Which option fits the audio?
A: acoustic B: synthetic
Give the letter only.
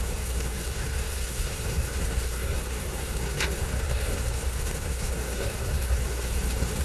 B